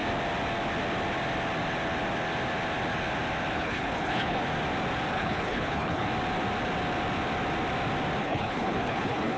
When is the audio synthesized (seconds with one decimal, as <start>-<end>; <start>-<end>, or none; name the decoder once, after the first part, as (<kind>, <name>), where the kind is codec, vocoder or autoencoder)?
3.5-4.4 (codec, HILCodec); 5.1-6.1; 8.2-9.4

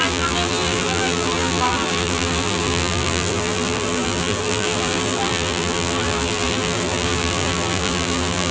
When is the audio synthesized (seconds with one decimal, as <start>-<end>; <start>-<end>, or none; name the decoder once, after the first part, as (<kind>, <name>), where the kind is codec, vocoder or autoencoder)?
0.0-8.5 (vocoder, BigVGAN v2)

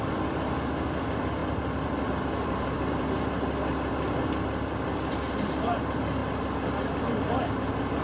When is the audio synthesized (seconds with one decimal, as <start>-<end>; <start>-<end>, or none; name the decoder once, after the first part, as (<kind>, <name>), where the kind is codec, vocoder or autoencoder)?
0.0-6.2 (vocoder, BigVGAN v2); 7.0-8.0

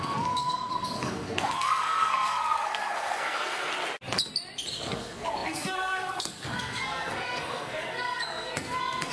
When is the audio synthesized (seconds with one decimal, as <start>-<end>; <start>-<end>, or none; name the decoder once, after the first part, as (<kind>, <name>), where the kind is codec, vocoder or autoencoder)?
0.0-3.7 (codec, SNAC); 4.7-9.1

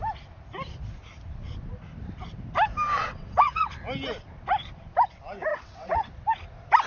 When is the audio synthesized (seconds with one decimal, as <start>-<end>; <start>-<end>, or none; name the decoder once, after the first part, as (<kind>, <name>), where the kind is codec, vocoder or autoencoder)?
3.0-3.7 (vocoder, WaveNeXt); 5.5-6.1